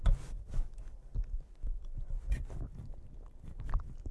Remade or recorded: recorded